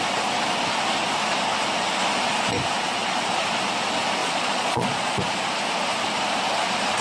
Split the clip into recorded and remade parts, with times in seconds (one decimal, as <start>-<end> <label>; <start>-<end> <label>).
0.0-4.2 recorded; 4.2-5.2 remade; 5.2-7.0 recorded